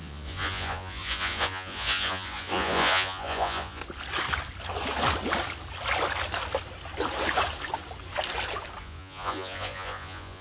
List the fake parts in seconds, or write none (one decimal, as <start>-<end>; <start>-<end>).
0.0-3.8; 8.8-10.4